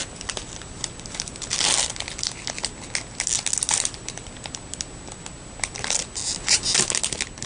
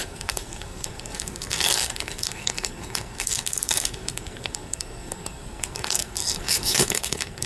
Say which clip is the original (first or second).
first